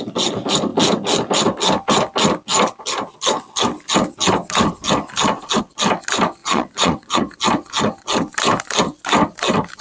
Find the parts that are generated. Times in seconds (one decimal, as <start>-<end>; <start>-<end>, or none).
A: 6.4-7.2